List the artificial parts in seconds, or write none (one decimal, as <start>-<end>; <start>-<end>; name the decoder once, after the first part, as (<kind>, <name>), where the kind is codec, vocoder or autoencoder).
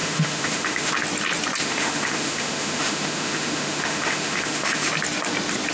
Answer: 0.0-0.9 (autoencoder, DAC-VAE); 1.6-4.9